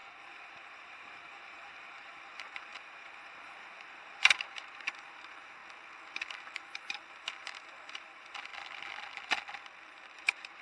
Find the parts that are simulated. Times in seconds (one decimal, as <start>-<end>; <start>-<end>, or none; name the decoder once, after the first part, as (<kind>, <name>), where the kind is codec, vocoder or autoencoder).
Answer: 0.0-5.6 (vocoder, BigVGAN v2); 6.6-8.5; 9.8-10.6